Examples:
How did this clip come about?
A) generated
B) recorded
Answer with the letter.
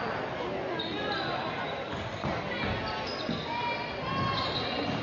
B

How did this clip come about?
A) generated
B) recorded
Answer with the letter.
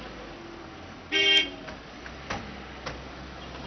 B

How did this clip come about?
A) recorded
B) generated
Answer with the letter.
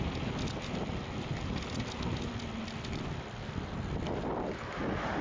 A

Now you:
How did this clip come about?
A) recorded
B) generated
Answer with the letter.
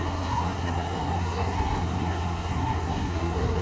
B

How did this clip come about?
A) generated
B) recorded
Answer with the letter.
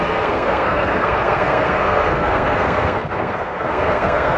A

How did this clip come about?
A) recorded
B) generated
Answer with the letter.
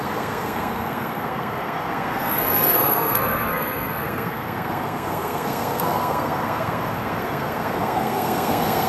B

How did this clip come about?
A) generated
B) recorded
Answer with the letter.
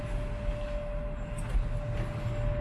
B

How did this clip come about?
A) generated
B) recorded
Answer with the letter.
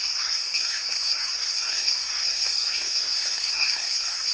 A